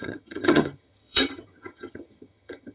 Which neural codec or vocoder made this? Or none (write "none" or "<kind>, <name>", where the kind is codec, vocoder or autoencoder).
vocoder, HiFi-GAN